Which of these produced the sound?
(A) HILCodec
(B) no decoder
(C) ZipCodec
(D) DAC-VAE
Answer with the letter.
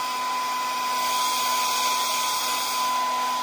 B